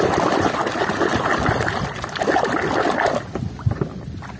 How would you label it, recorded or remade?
recorded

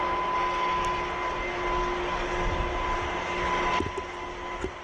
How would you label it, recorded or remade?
recorded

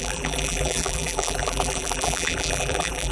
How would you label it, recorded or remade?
remade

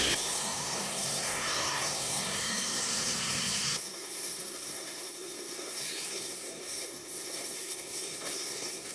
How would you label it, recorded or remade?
remade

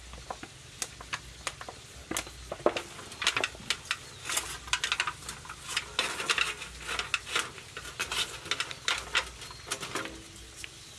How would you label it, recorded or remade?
recorded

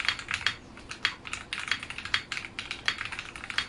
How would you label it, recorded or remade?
recorded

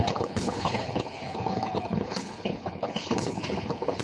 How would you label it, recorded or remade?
remade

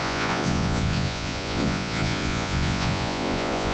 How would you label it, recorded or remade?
remade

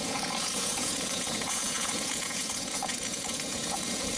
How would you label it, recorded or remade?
remade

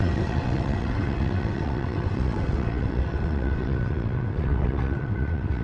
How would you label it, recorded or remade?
remade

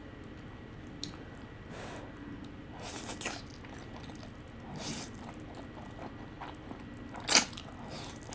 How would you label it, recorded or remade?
recorded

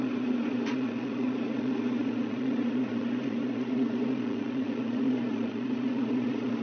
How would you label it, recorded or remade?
remade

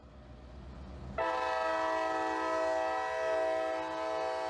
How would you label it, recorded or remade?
recorded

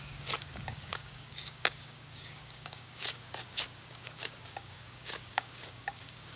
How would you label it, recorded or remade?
remade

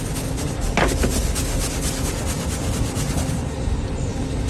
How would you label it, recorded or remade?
recorded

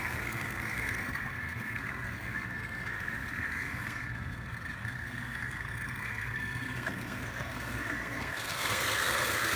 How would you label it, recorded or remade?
remade